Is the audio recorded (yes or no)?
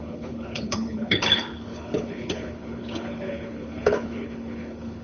no